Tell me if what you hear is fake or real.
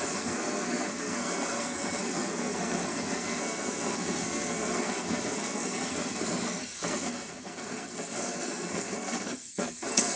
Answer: fake